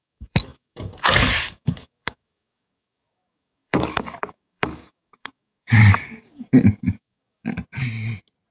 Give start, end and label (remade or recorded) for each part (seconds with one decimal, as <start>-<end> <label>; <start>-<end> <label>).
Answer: 0.0-7.6 remade; 7.6-8.5 recorded